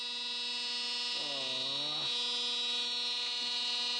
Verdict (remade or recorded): recorded